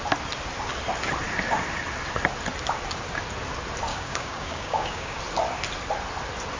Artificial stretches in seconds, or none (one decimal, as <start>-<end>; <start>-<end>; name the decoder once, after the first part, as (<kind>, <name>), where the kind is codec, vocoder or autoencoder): 3.9-5.2 (codec, DAC)